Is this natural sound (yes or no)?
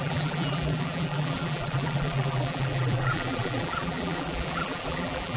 no